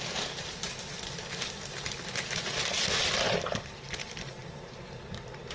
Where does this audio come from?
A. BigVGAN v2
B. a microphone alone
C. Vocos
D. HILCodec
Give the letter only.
A